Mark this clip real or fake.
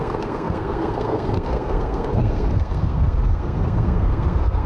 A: fake